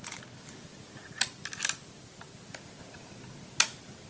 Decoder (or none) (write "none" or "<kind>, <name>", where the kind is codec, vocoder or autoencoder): none